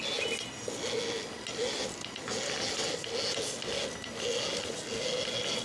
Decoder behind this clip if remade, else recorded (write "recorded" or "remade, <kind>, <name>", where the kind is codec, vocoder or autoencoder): recorded